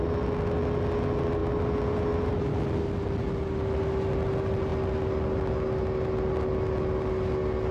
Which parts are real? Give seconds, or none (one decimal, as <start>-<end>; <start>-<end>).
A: 0.0-7.7